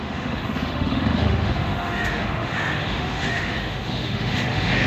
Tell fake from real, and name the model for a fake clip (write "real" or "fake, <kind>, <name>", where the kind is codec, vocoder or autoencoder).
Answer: fake, autoencoder, DAC-VAE